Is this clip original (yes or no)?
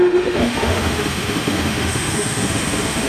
no